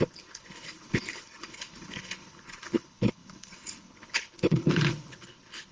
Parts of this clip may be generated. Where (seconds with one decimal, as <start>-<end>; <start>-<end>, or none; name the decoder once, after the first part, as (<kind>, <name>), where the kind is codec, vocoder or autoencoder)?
0.0-5.7 (codec, HILCodec)